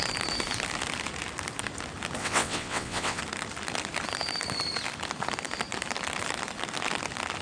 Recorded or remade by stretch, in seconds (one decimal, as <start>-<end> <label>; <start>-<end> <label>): 0.0-2.2 recorded; 2.2-3.2 remade; 3.2-7.4 recorded